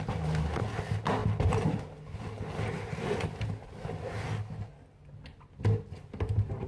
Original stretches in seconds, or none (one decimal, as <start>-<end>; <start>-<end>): 0.0-6.7